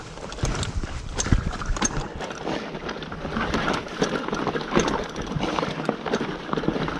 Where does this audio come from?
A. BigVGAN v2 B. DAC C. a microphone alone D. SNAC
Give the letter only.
A